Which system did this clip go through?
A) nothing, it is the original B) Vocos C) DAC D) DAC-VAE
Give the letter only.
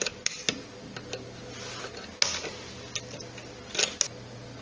A